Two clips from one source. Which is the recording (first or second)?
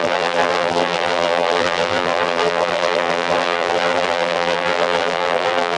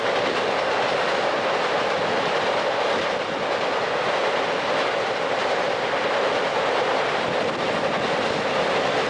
second